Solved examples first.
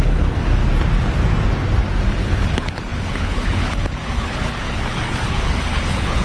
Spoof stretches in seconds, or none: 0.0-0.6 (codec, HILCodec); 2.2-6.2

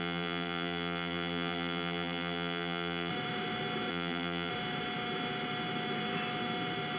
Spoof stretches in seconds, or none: 0.0-3.1 (vocoder, BigVGAN v2); 3.9-4.5

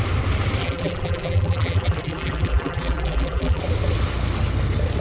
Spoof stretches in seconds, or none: 0.6-3.6 (vocoder, BigVGAN v2)

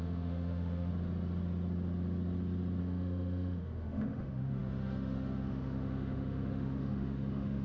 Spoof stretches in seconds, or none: 0.0-0.9 (autoencoder, DAC-VAE); 2.8-7.6

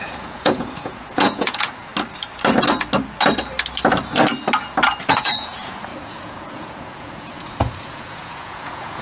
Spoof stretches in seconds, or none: 0.0-1.9 (vocoder, Vocos); 5.1-9.0

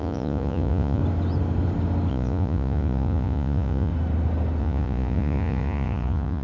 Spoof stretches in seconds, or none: 0.0-1.0 (vocoder, Vocos); 2.1-3.9; 4.6-6.4